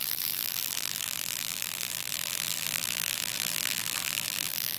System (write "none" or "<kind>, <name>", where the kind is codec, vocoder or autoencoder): vocoder, BigVGAN v2